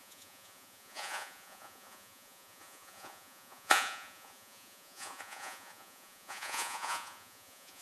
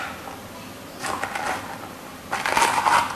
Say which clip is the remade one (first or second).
first